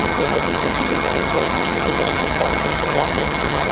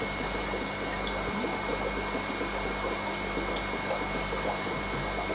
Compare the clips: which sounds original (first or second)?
second